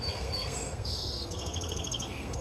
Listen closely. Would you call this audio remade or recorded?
remade